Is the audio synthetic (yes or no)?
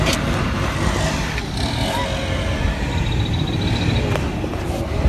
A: no